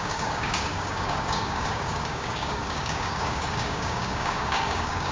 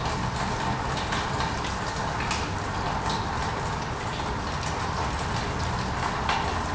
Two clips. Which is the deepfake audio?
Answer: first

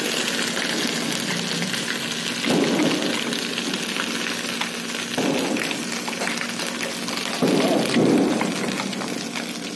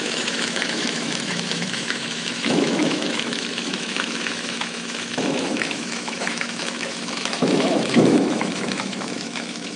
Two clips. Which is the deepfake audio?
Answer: second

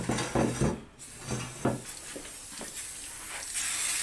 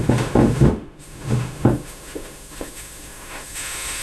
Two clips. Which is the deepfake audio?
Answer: second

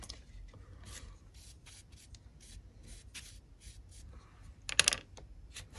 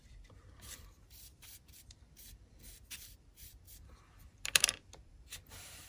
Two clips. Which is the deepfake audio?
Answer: second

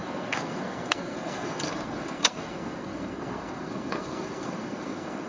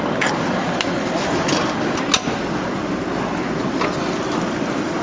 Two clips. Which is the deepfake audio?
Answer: first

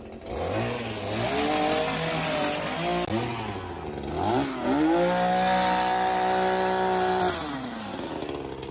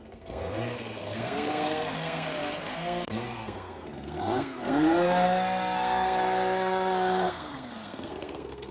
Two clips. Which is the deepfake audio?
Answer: second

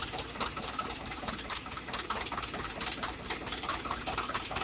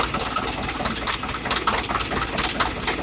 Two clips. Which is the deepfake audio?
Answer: first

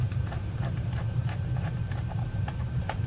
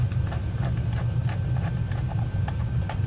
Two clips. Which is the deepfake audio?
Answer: first